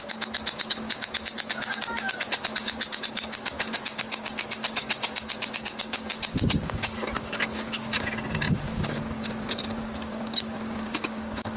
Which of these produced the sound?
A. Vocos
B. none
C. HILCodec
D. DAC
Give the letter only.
D